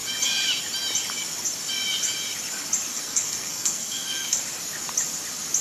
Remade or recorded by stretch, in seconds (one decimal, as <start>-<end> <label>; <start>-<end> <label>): 0.0-2.9 recorded; 2.9-4.4 remade; 4.4-5.6 recorded